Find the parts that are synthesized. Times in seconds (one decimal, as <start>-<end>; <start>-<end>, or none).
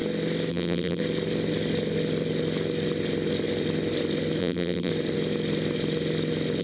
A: 0.5-1.0; 4.4-4.9